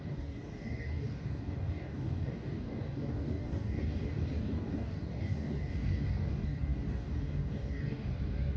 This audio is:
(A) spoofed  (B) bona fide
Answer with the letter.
A